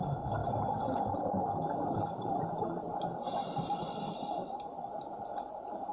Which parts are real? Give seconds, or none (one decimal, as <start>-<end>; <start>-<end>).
0.0-0.4; 3.9-4.4; 5.2-5.9

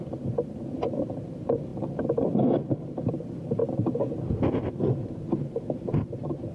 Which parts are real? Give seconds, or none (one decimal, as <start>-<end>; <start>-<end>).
3.6-5.3

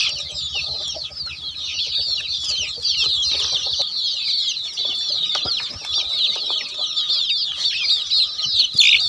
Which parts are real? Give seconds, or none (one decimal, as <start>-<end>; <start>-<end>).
0.0-4.8; 5.5-9.1

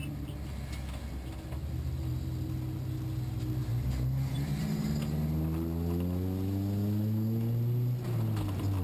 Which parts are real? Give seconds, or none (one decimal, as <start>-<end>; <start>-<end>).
0.0-3.6; 4.9-8.8

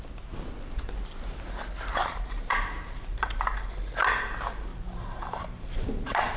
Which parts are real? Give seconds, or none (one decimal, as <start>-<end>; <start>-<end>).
0.0-1.9; 3.4-4.7